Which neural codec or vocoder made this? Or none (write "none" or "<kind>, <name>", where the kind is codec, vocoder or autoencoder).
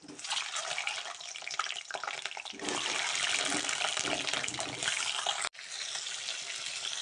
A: none